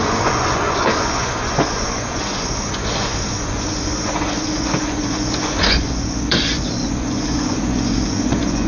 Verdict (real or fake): fake